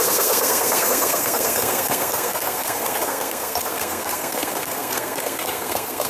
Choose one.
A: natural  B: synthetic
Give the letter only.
B